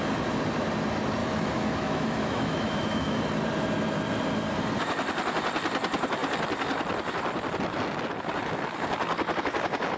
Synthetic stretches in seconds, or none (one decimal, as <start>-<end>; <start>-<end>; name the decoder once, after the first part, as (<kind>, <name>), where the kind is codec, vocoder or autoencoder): 1.2-3.2 (autoencoder, DAC-VAE)